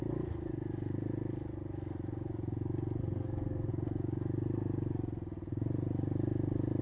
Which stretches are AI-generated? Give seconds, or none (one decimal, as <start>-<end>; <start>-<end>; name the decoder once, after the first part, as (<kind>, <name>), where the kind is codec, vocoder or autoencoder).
3.0-3.7 (codec, SNAC)